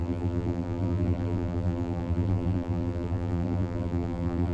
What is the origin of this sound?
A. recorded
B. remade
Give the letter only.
B